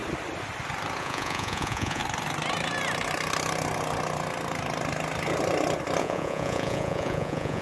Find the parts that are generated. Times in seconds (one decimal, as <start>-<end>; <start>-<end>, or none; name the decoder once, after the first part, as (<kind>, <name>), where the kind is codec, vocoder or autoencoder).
1.0-2.0 (vocoder, Vocos); 6.0-7.6